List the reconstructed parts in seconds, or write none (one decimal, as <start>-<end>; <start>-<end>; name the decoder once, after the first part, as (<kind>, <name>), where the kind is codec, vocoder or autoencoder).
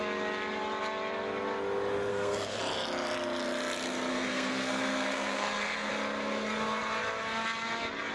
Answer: 2.1-2.6 (codec, SNAC); 4.1-5.9